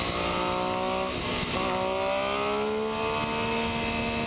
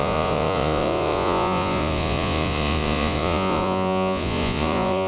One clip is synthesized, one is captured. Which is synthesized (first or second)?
second